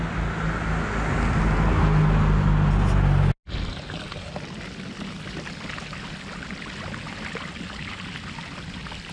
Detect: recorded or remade recorded